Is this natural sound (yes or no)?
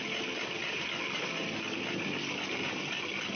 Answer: yes